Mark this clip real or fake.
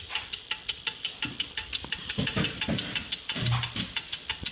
real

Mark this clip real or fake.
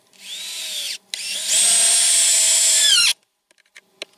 real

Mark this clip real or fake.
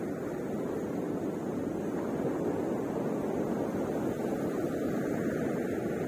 real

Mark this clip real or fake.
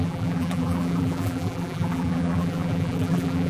fake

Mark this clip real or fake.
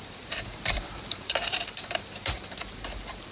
fake